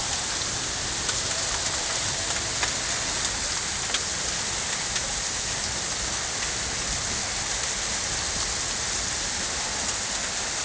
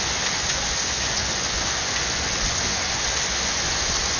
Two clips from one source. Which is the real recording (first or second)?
first